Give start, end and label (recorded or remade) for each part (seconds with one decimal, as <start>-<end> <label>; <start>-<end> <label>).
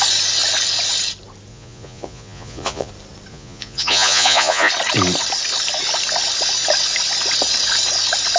0.0-1.5 recorded; 1.5-2.9 remade; 2.9-3.3 recorded; 3.3-4.7 remade; 4.7-8.4 recorded